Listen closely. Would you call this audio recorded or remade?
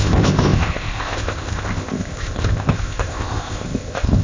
remade